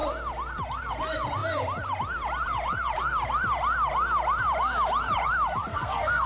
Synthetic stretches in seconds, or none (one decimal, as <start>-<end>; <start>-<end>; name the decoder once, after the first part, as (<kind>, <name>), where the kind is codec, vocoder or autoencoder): 5.7-6.3 (codec, SNAC)